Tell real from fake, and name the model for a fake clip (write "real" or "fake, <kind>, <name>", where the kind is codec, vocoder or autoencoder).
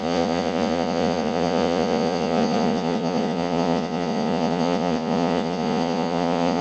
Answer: fake, vocoder, Vocos